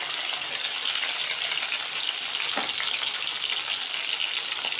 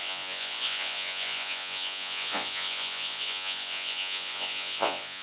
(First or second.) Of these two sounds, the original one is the first